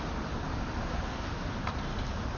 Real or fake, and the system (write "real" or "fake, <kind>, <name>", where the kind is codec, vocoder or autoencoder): real